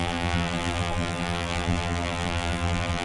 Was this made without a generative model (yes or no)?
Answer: no